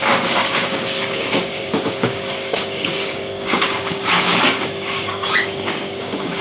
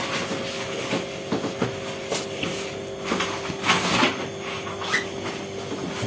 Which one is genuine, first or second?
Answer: second